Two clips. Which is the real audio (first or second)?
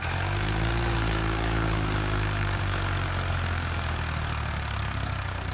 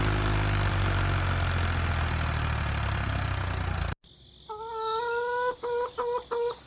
second